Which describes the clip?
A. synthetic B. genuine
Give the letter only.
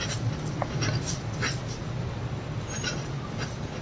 B